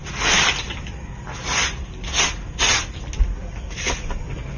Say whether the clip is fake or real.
real